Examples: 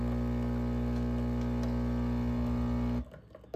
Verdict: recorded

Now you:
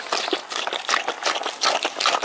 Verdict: recorded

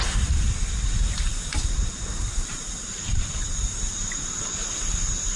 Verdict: remade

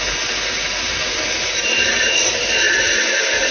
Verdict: recorded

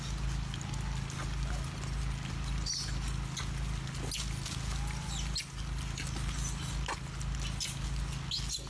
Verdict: recorded